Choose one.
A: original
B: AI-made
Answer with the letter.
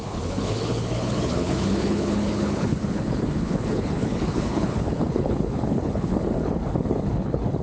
B